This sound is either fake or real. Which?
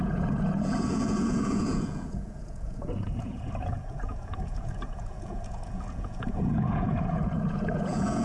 fake